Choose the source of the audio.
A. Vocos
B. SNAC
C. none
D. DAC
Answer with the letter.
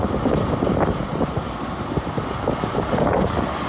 C